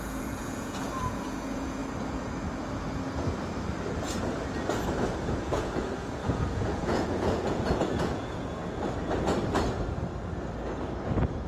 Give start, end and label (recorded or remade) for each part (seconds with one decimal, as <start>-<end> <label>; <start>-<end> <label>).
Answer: 0.0-1.8 remade; 1.8-5.4 recorded; 5.4-8.6 remade; 8.6-11.5 recorded